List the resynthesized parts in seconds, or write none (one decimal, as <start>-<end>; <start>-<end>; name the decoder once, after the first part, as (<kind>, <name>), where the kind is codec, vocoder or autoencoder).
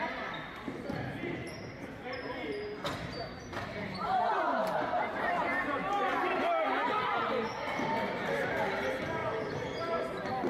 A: 1.4-5.4 (vocoder, BigVGAN v2); 9.2-9.8